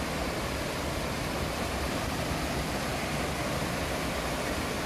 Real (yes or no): yes